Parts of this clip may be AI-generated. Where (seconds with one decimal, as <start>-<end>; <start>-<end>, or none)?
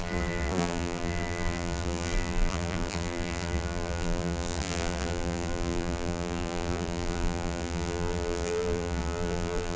0.0-9.8